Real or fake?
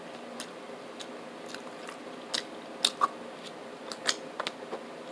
real